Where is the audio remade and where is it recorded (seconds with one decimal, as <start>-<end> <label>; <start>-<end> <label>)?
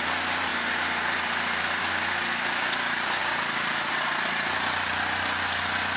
0.0-6.0 recorded